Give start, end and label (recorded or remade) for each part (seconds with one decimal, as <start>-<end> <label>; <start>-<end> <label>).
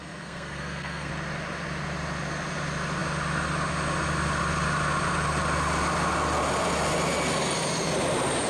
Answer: 0.0-1.1 remade; 1.1-8.5 recorded